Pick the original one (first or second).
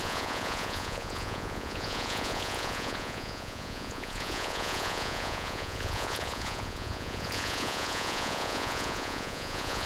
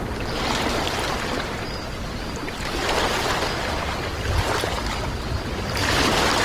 second